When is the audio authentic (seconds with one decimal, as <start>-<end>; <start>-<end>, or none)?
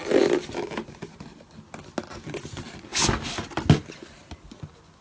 0.0-5.0